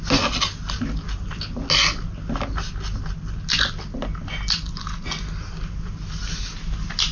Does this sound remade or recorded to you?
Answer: recorded